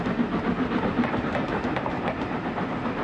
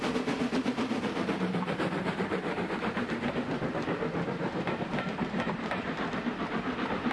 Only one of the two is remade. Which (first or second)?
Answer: second